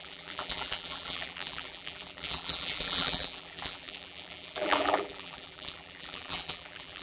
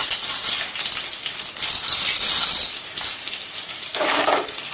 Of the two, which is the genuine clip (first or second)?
second